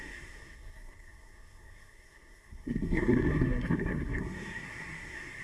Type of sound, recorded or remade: remade